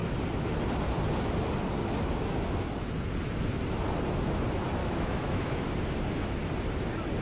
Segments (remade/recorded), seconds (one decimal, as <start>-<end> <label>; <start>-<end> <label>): 0.0-4.8 recorded; 4.8-5.6 remade; 5.6-7.2 recorded